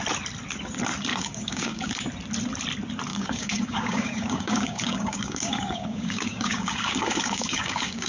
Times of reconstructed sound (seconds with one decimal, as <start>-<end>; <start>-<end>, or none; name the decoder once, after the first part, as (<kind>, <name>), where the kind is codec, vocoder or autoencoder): 1.1-1.9 (codec, DAC); 3.1-8.1